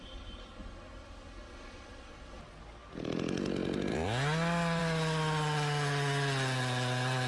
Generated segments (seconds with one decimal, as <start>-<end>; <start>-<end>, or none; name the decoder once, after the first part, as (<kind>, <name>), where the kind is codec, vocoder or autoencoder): none